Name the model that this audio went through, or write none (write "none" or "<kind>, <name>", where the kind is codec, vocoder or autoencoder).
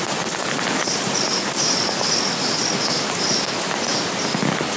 none